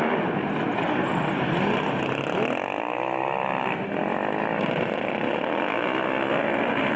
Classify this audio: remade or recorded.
recorded